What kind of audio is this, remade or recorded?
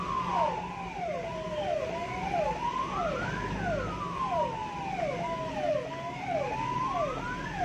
recorded